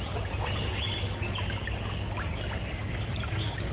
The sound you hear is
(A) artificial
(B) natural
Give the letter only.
B